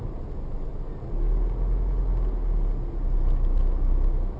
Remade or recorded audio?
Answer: recorded